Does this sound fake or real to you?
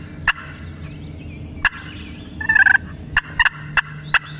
real